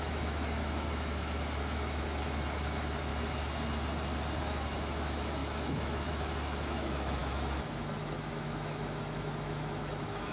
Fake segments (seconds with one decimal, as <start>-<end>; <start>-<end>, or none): 0.0-3.1; 4.4-10.3